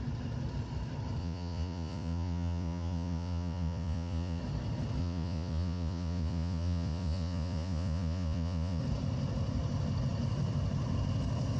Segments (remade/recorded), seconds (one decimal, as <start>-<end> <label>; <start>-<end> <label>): 0.0-1.2 recorded; 1.2-4.4 remade; 4.4-5.0 recorded; 5.0-8.8 remade; 8.8-11.6 recorded